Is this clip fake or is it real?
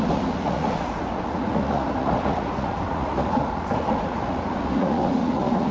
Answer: fake